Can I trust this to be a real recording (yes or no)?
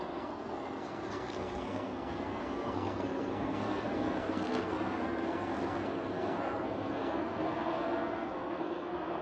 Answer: no